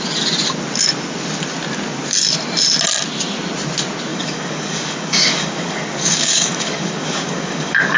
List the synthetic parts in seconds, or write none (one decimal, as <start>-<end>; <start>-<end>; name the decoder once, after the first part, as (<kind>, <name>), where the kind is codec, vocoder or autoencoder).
4.1-8.0 (codec, DAC)